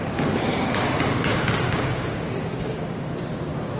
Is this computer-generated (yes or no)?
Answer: yes